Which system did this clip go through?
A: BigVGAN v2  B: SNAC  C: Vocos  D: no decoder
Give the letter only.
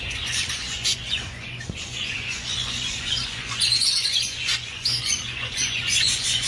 C